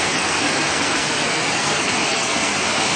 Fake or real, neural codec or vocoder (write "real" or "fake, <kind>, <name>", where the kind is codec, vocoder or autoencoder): fake, codec, SNAC